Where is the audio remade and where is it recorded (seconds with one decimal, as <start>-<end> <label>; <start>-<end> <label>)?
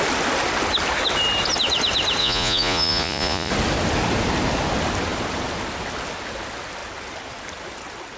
0.0-2.2 recorded; 2.2-3.5 remade; 3.5-8.2 recorded